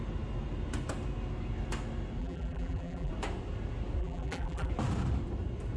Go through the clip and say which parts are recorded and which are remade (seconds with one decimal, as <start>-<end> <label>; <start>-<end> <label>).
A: 0.0-2.2 recorded; 2.2-3.1 remade; 3.1-4.0 recorded; 4.0-4.7 remade; 4.7-5.8 recorded